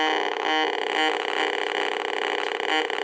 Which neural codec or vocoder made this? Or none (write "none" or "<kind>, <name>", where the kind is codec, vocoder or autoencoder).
none